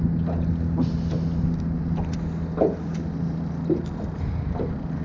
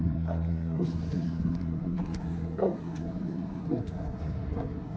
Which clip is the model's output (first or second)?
second